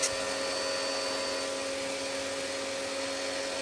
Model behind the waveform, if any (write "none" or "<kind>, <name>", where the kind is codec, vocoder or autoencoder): none